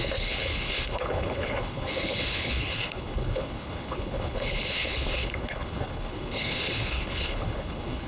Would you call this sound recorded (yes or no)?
no